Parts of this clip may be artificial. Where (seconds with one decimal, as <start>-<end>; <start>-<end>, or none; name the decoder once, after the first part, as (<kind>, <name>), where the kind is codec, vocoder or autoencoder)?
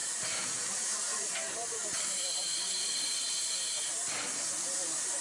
0.0-3.1 (vocoder, BigVGAN v2)